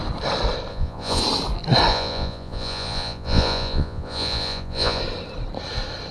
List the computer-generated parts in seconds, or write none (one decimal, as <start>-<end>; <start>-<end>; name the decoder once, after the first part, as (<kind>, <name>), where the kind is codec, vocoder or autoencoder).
0.7-1.2 (vocoder, Vocos); 1.9-5.0